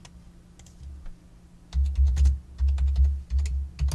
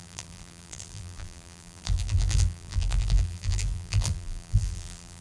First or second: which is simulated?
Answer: second